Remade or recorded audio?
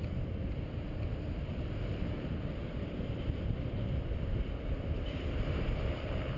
recorded